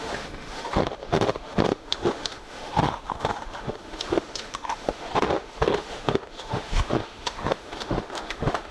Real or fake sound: fake